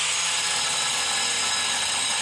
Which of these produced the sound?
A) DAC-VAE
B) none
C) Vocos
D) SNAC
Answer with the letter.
B